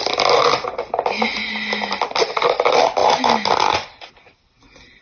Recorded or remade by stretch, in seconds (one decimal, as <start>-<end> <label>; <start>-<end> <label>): 0.0-5.0 recorded